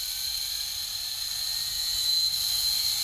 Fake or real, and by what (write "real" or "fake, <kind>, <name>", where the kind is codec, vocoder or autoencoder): real